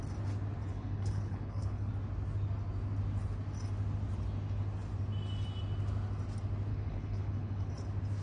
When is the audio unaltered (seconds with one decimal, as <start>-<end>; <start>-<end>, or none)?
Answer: 0.0-0.7; 1.9-6.7; 7.7-8.2